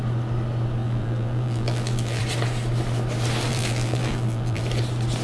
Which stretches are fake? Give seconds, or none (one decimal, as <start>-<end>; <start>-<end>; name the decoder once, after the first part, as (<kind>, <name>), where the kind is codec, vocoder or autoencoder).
0.8-2.2 (vocoder, BigVGAN v2); 3.5-4.6